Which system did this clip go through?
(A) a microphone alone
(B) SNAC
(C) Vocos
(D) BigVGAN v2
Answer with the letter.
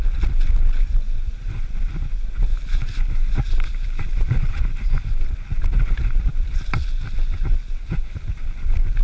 A